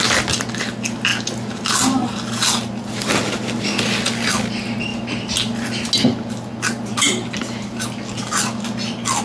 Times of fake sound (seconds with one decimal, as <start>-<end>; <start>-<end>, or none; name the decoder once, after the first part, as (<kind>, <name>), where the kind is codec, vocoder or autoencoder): none

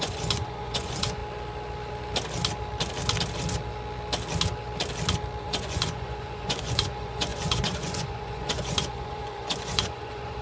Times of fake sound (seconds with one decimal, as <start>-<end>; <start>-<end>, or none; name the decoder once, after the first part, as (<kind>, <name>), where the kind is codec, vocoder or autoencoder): 0.0-1.2 (vocoder, Vocos); 5.4-10.4

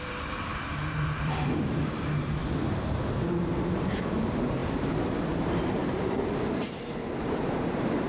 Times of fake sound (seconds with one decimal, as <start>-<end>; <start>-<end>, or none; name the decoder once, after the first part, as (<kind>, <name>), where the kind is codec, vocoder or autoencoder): 0.0-2.4 (vocoder, BigVGAN v2); 3.7-5.8; 7.2-8.1

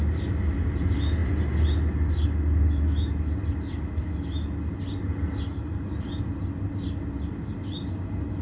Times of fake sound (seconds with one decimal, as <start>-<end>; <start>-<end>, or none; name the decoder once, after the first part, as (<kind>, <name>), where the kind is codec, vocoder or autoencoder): none

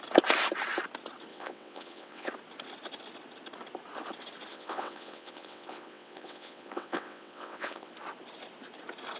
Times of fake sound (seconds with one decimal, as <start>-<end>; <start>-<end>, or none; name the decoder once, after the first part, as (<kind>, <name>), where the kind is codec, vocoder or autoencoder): 1.3-2.3 (vocoder, WaveNeXt); 4.5-7.9